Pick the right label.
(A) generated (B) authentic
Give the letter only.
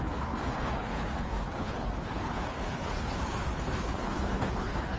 A